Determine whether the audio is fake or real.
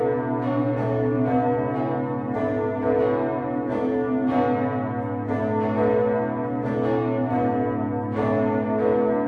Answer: real